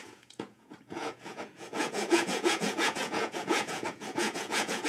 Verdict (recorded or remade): remade